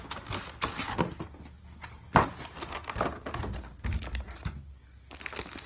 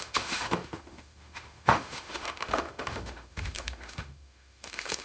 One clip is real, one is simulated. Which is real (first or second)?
first